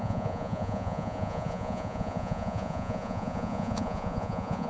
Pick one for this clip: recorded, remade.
remade